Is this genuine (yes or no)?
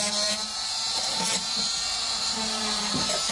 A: no